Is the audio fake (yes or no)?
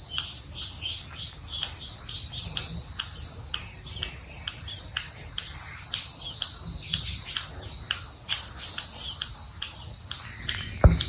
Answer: no